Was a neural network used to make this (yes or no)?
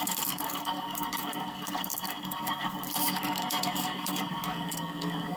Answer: yes